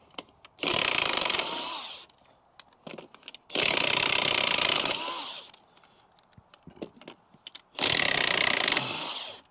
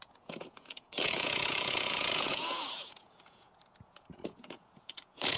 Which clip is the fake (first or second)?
second